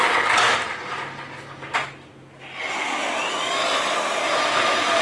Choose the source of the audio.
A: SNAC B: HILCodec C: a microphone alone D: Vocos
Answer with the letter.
C